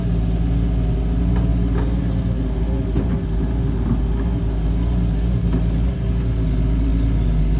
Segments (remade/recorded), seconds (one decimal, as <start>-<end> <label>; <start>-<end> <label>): 0.0-7.6 recorded